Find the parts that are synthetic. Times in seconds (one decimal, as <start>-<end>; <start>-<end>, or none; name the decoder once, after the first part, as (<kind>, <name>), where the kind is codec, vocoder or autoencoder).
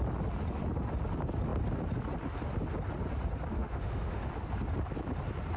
3.5-4.2 (autoencoder, DAC-VAE)